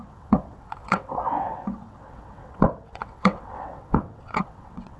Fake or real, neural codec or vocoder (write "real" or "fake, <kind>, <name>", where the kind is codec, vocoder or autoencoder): fake, vocoder, WaveNeXt